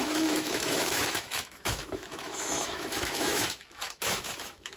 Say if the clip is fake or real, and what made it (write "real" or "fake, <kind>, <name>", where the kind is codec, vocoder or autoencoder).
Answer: fake, autoencoder, DAC-VAE